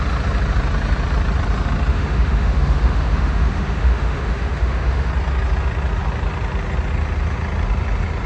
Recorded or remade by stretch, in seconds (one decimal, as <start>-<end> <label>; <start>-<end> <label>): 0.0-1.9 recorded; 1.9-5.1 remade; 5.1-8.3 recorded